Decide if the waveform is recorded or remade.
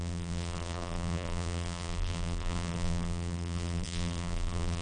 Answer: remade